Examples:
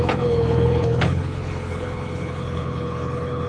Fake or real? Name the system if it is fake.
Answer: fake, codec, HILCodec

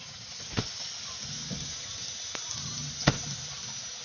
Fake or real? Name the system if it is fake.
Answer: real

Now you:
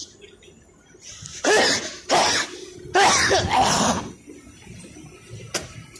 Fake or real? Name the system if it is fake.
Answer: real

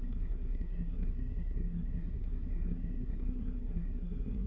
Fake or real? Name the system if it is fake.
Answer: fake, codec, SNAC